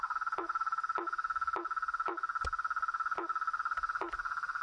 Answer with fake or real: real